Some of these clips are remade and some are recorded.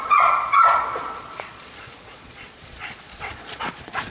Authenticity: remade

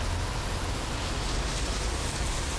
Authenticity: recorded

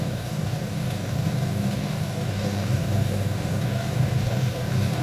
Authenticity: remade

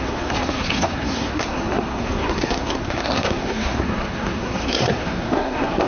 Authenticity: remade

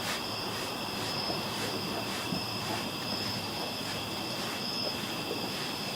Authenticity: remade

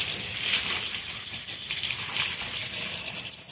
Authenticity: recorded